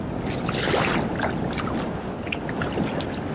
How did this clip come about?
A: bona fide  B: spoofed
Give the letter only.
A